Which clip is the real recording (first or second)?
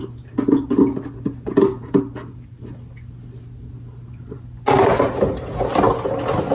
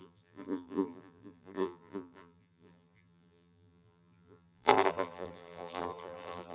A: first